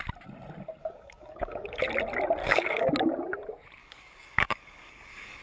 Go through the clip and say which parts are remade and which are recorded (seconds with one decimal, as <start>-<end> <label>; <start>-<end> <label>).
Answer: 0.0-0.8 recorded; 0.8-1.8 remade; 1.8-2.4 recorded; 2.4-2.9 remade; 2.9-3.8 recorded; 3.8-5.4 remade